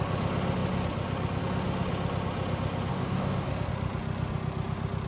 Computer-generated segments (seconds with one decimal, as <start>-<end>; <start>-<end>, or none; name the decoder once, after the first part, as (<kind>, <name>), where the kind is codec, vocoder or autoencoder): 2.9-3.5 (codec, DAC)